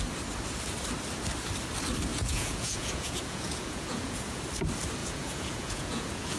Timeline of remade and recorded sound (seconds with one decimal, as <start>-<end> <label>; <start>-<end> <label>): 0.0-2.1 recorded; 2.1-4.4 remade; 4.4-5.0 recorded; 5.0-6.4 remade